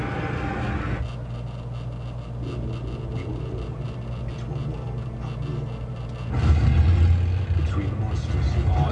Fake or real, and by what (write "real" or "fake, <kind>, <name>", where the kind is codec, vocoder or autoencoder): real